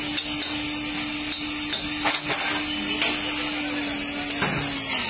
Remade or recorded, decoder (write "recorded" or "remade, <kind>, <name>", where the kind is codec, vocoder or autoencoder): recorded